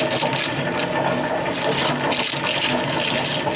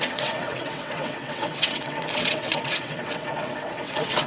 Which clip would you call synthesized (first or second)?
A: second